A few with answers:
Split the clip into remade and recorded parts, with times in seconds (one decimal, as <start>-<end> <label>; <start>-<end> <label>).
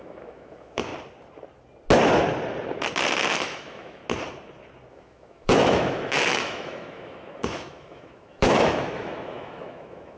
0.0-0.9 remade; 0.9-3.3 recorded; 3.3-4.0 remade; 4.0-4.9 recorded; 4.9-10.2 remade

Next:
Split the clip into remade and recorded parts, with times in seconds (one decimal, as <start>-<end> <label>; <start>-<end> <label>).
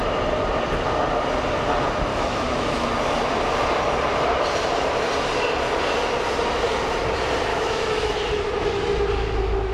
0.0-2.1 recorded; 2.1-2.9 remade; 2.9-7.5 recorded; 7.5-8.1 remade; 8.1-9.7 recorded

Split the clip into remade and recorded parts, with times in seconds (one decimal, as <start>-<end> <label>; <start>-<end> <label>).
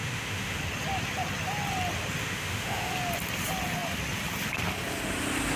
0.0-0.6 remade; 0.6-2.2 recorded; 2.2-2.9 remade; 2.9-5.6 recorded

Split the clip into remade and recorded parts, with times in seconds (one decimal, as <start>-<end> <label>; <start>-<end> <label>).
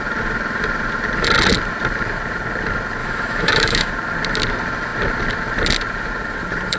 0.0-3.0 recorded; 3.0-3.9 remade; 3.9-6.8 recorded